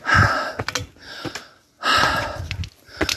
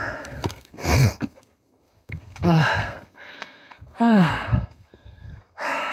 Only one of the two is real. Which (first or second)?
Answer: first